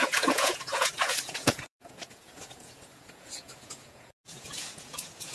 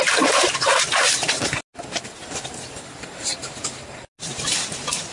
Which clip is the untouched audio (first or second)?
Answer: second